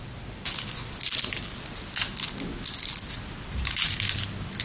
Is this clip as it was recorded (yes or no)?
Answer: yes